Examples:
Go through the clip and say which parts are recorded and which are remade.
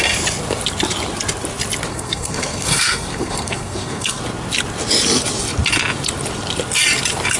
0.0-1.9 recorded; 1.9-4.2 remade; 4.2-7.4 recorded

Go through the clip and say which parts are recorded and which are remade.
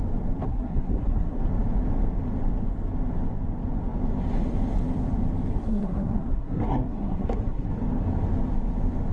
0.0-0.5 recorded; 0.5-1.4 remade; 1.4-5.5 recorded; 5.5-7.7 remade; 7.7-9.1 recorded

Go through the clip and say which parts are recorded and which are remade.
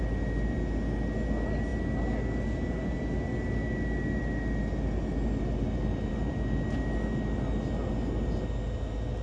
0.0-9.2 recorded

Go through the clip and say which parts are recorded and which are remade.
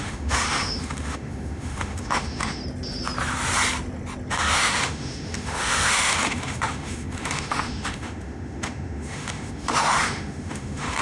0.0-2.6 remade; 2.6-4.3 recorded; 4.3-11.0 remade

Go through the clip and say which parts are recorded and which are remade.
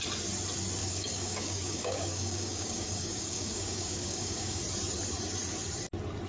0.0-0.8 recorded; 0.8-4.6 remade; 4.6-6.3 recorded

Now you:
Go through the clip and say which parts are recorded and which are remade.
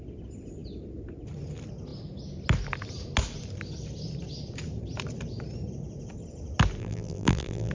0.0-6.8 recorded; 6.8-7.7 remade